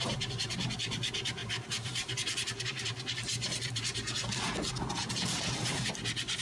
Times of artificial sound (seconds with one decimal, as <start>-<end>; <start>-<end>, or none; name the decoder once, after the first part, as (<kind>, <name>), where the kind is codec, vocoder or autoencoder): none

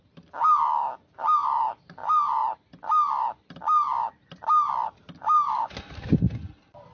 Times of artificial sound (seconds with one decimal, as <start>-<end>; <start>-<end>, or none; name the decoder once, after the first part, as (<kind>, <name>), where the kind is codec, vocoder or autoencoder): none

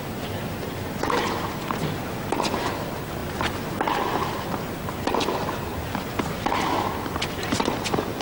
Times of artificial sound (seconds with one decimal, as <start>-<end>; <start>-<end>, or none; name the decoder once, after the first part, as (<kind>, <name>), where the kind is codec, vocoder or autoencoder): none

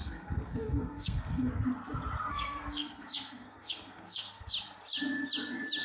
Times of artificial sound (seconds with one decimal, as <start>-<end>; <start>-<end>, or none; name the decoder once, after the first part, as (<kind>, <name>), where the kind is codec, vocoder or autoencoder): 0.0-1.5 (codec, SNAC); 2.2-4.5

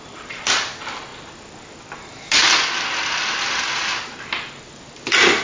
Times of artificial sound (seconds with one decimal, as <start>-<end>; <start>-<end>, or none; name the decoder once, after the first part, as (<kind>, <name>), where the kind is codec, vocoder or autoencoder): none

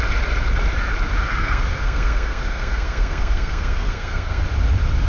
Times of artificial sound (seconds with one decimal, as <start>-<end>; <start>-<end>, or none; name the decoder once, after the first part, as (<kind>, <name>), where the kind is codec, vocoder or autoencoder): 1.3-4.4 (codec, SNAC)